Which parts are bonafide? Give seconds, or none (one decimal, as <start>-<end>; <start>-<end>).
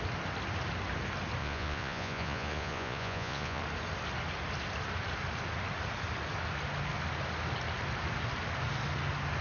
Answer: 0.0-1.4; 3.6-9.4